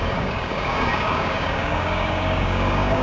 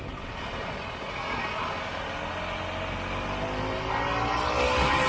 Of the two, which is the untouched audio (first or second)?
second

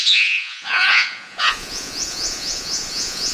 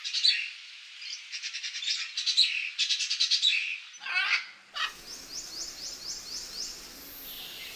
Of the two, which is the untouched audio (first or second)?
second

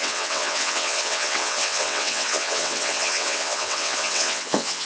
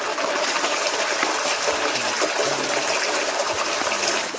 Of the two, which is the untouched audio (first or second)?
second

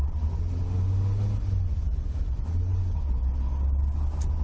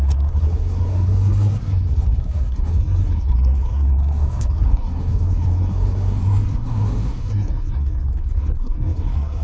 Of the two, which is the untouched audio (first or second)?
first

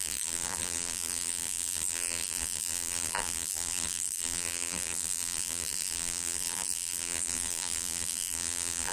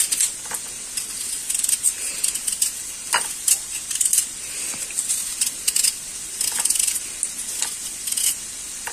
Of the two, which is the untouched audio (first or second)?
second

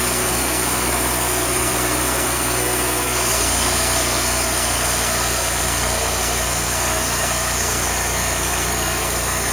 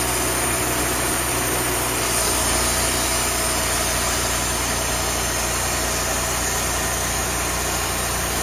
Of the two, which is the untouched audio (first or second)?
second